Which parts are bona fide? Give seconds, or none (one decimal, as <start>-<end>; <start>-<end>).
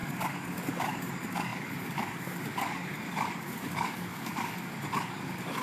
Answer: none